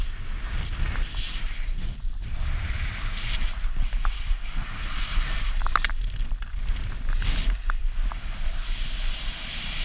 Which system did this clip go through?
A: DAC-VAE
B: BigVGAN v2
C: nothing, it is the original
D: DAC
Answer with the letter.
C